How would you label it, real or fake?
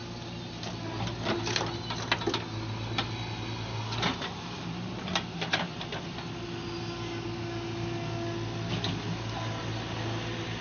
real